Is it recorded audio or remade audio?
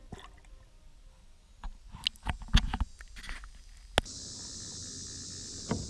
recorded